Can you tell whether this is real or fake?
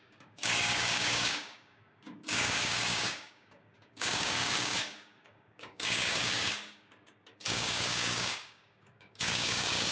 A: fake